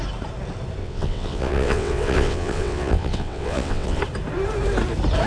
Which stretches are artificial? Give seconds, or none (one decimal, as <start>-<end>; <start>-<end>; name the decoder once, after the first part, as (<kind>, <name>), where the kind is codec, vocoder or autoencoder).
0.8-4.0 (vocoder, WaveNeXt)